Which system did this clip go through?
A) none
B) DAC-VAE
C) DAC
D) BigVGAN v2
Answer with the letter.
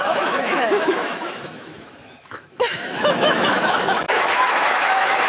B